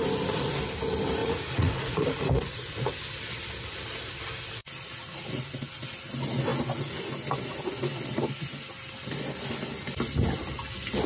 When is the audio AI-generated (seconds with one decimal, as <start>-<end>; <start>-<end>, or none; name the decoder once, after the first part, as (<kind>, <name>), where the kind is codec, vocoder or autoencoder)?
1.2-2.9 (vocoder, Vocos); 4.6-5.4